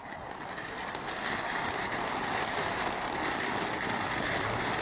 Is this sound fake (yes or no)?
no